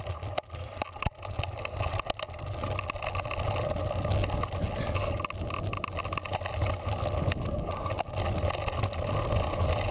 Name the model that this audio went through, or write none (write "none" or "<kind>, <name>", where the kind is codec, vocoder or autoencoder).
none